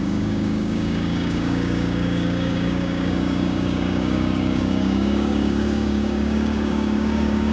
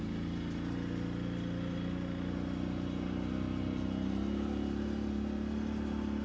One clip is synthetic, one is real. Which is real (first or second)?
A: second